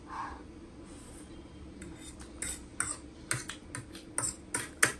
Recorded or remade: recorded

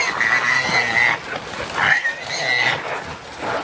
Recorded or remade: recorded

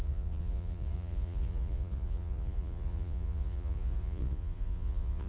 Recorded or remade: remade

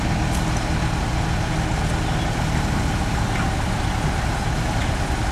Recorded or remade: recorded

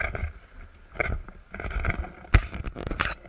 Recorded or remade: recorded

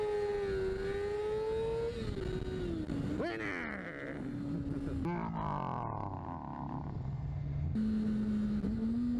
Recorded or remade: recorded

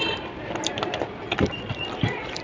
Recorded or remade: recorded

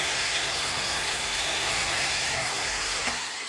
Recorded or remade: remade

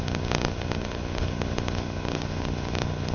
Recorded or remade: remade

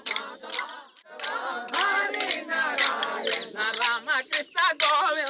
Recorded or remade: recorded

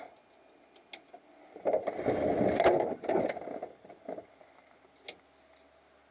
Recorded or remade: recorded